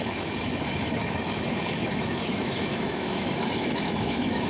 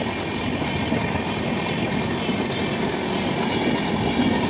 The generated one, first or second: first